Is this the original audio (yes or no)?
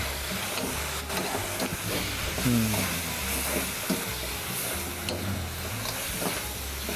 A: yes